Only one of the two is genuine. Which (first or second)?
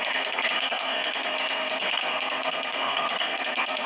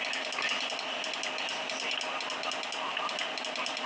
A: second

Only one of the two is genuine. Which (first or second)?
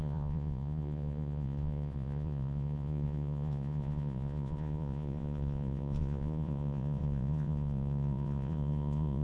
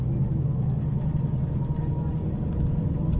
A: second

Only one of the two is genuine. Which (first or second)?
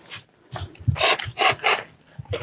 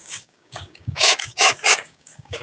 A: first